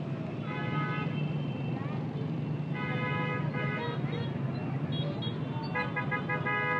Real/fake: real